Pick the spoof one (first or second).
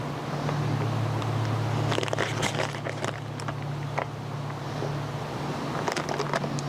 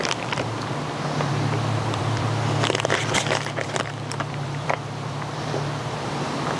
second